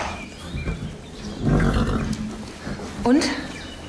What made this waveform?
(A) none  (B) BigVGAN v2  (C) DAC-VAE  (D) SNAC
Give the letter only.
A